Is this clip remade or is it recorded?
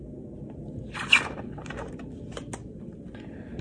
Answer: recorded